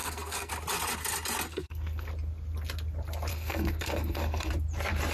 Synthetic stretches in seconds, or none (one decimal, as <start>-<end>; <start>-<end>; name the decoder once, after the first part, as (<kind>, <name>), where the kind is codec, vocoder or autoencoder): 0.0-0.5 (codec, SNAC); 1.5-2.1; 3.3-4.5

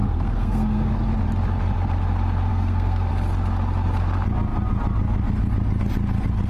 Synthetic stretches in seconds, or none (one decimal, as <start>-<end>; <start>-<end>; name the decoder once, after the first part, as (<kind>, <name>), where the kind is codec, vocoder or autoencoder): 0.0-0.9 (codec, SNAC); 2.5-3.1

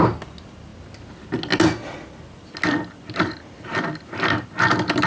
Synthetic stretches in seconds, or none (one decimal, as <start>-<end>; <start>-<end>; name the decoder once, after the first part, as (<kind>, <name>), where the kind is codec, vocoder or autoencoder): none

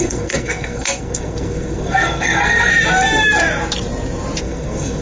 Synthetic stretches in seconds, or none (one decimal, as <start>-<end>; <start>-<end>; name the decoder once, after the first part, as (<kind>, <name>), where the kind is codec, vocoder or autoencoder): 0.0-2.7 (codec, SNAC); 4.4-5.0

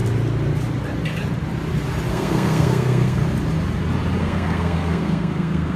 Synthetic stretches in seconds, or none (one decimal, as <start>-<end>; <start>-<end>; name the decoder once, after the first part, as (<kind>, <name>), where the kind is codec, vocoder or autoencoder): 2.1-3.2 (codec, SNAC); 4.2-5.8